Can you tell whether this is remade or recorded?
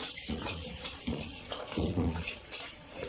remade